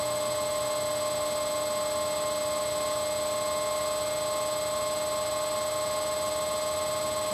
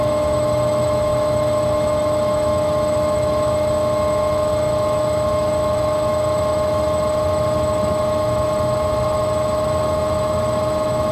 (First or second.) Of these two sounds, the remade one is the second